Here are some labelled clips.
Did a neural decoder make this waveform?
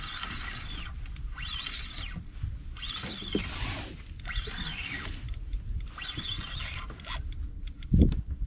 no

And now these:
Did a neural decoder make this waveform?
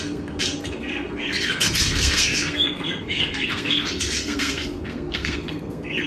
yes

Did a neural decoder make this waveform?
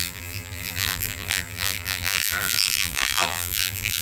yes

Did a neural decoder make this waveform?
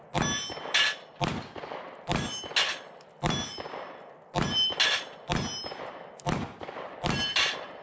no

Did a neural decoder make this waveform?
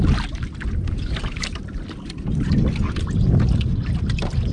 no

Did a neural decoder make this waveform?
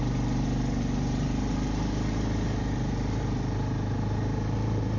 no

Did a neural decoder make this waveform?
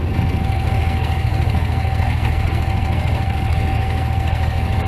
yes